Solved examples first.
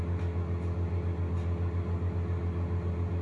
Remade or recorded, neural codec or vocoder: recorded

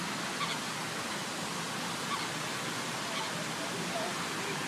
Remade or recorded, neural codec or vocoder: recorded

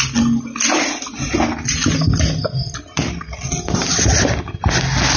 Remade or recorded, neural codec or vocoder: recorded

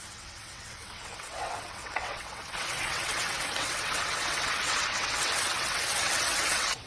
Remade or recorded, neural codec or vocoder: remade, vocoder, WaveNeXt